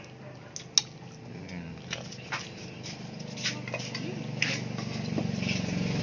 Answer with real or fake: real